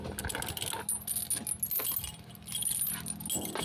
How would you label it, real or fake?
real